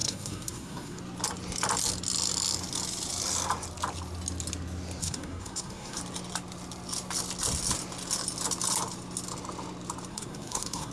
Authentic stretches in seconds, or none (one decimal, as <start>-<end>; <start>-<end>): 1.0-5.0; 6.0-10.1